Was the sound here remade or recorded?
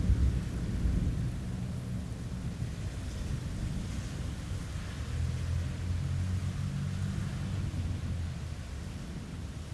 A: recorded